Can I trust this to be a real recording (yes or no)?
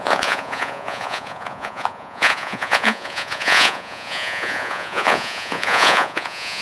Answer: no